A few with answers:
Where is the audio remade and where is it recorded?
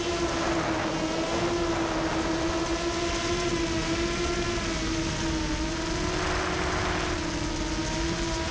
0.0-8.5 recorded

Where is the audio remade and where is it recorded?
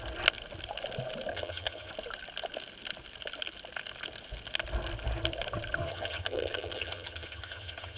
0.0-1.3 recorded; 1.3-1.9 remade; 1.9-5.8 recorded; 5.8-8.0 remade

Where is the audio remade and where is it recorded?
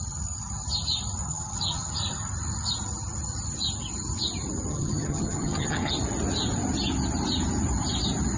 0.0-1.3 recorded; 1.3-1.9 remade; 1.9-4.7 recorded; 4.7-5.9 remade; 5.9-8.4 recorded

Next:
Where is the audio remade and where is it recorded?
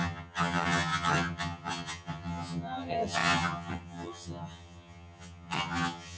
0.0-6.2 remade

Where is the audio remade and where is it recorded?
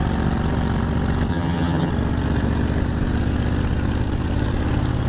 0.0-1.3 recorded; 1.3-1.9 remade; 1.9-5.1 recorded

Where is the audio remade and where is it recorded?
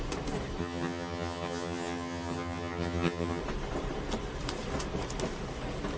0.0-0.6 recorded; 0.6-3.4 remade; 3.4-6.0 recorded